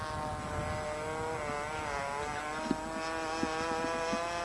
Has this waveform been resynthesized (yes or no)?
no